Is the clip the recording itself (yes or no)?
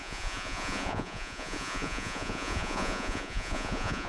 no